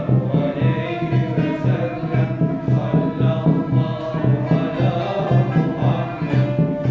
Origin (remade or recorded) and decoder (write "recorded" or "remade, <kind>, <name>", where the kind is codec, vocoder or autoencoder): recorded